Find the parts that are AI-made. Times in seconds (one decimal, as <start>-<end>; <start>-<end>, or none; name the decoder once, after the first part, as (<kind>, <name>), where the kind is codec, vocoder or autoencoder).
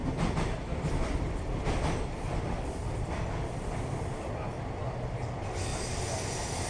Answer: 0.0-4.0 (vocoder, BigVGAN v2); 5.7-6.2